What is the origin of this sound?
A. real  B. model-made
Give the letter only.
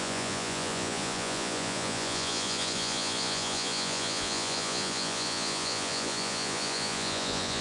B